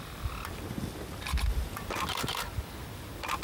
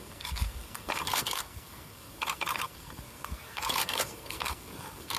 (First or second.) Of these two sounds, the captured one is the first